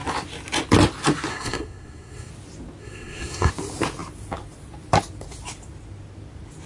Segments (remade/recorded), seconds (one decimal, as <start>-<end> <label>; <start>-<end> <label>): 0.0-1.3 recorded; 1.3-2.3 remade; 2.3-2.8 recorded; 2.8-3.5 remade; 3.5-6.7 recorded